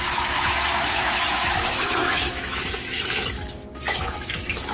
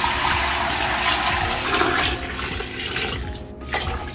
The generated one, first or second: first